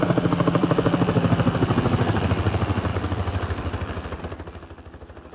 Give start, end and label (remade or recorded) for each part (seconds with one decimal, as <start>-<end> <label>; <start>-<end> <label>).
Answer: 0.0-0.6 recorded; 0.6-2.3 remade; 2.3-2.9 recorded; 2.9-4.2 remade; 4.2-5.3 recorded